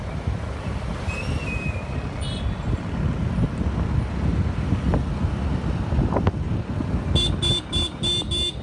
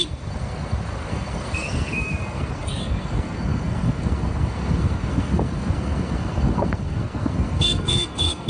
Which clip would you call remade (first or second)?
second